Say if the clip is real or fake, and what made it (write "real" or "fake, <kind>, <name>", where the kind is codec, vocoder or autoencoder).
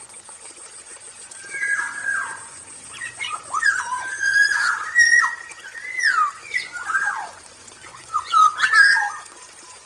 fake, vocoder, Vocos